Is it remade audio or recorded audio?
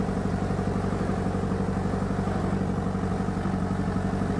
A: recorded